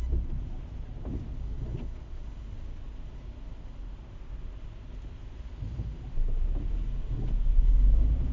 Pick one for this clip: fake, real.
real